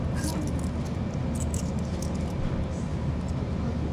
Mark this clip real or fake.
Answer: real